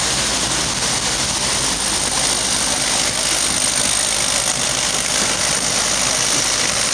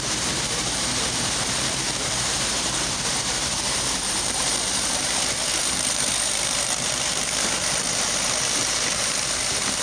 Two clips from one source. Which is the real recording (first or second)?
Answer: first